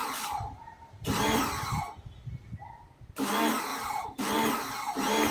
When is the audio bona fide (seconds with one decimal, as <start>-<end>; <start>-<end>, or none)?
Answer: 2.4-3.7; 4.2-5.3